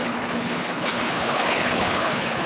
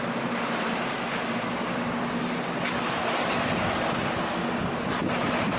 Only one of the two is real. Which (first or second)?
second